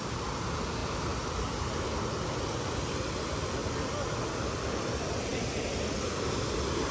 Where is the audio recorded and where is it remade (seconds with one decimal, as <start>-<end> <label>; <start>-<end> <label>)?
0.0-3.6 recorded; 3.6-4.8 remade; 4.8-6.9 recorded